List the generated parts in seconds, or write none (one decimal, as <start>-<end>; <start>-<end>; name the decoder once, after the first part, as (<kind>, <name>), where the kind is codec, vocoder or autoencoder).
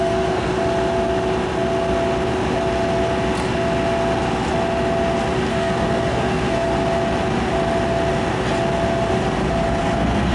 0.0-0.5 (codec, SNAC); 5.5-6.7; 9.8-10.3